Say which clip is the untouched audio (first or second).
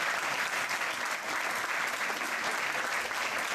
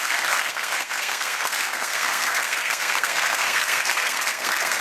first